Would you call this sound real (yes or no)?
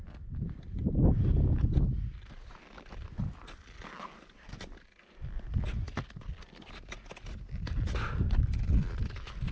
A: yes